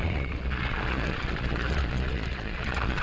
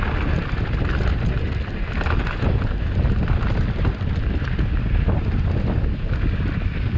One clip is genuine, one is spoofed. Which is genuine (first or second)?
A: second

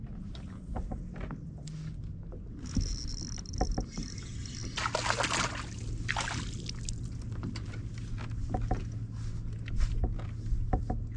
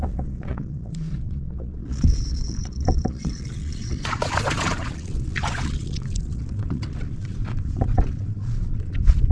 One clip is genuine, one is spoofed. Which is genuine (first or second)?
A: first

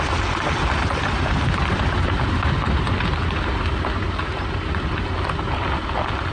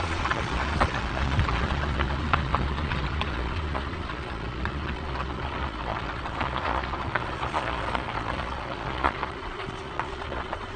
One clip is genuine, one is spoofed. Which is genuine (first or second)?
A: first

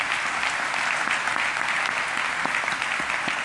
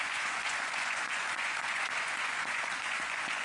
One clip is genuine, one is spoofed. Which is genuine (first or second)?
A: first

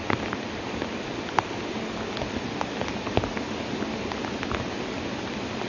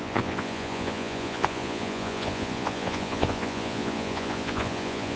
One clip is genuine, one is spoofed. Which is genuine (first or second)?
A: first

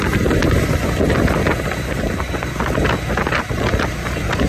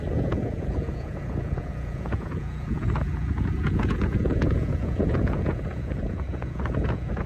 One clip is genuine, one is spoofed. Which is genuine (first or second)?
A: first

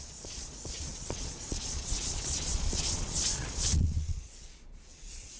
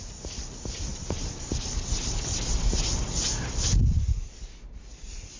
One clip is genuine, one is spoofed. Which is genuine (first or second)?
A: second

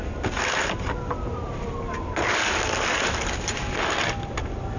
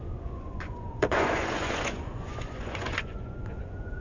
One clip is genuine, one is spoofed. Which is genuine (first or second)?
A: first